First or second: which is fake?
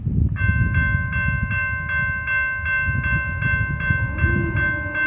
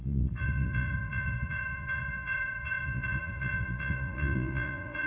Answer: second